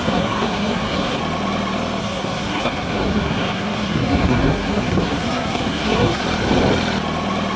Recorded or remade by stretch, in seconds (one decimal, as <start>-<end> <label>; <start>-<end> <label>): 0.0-1.2 remade; 1.2-2.0 recorded; 2.0-6.2 remade; 6.2-7.6 recorded